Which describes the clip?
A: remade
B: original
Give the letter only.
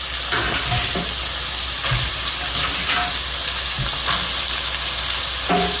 B